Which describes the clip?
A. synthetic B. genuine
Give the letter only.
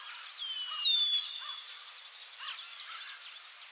B